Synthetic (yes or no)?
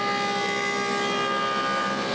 no